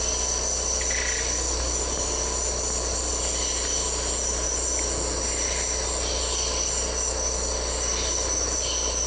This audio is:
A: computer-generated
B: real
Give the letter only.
B